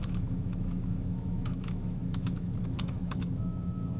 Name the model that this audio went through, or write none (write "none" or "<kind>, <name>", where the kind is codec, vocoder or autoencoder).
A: autoencoder, DAC-VAE